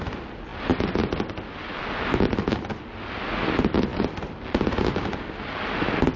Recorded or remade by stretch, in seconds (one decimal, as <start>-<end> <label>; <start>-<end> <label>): 0.0-6.2 recorded